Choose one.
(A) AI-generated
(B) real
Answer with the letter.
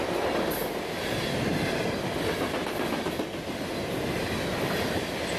B